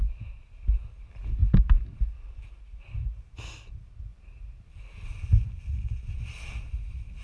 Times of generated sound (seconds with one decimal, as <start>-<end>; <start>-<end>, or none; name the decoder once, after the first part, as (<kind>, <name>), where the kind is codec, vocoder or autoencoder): none